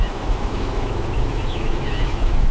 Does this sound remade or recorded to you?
remade